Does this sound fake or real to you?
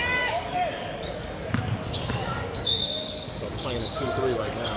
fake